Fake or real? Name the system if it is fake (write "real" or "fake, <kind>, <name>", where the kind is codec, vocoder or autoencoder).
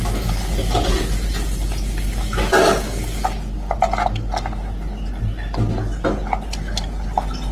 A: real